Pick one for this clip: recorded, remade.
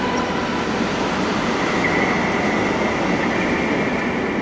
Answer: recorded